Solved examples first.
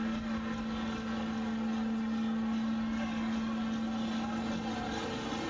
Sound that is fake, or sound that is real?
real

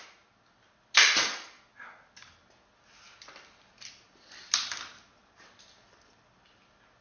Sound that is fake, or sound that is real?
real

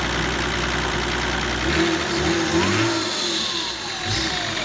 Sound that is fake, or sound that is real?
real